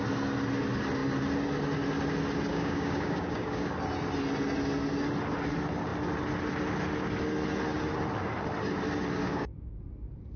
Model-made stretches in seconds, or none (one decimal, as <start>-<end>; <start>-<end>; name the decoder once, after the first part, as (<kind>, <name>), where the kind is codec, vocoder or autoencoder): 2.5-3.7 (codec, DAC); 9.2-9.8